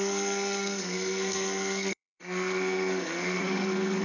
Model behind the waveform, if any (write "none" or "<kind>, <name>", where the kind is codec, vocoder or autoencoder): codec, SNAC